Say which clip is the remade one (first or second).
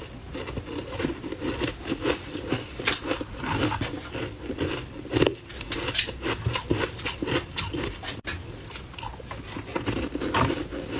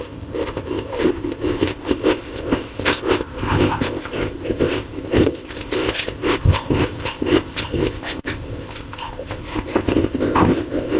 second